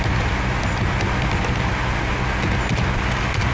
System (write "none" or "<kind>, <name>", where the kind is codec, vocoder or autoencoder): none